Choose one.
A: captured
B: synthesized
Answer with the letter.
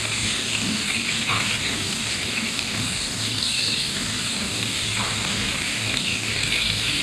B